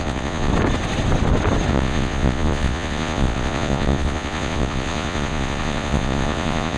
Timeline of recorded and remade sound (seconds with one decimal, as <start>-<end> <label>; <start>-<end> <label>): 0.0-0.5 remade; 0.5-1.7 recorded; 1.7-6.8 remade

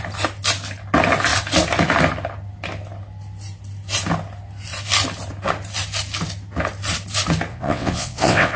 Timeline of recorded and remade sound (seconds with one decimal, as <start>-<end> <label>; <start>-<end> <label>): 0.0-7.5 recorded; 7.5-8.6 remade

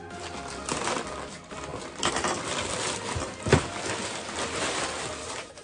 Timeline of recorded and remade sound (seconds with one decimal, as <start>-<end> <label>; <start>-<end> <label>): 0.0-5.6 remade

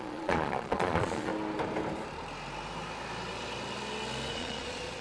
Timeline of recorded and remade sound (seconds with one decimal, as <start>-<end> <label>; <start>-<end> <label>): 0.0-1.3 remade; 1.3-4.3 recorded; 4.3-5.0 remade

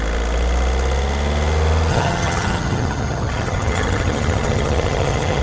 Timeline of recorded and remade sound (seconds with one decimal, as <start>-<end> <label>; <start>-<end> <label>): 0.0-1.9 recorded; 1.9-5.4 remade